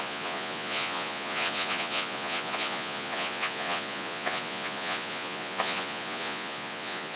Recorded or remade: remade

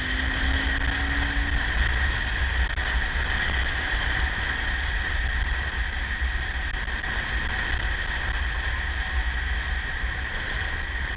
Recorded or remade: recorded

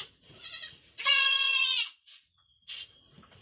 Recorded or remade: remade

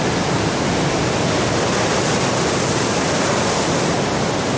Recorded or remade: recorded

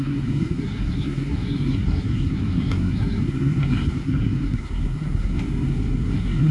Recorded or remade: remade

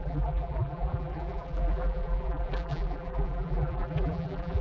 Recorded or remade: remade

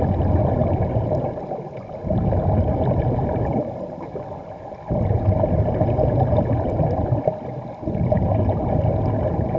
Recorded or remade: recorded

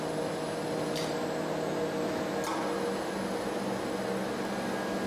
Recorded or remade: recorded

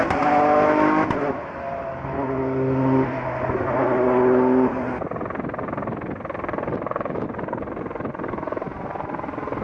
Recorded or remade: recorded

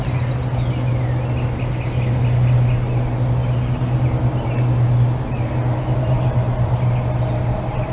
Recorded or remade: recorded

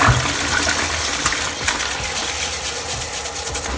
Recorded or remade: recorded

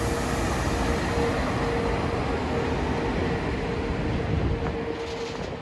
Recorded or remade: recorded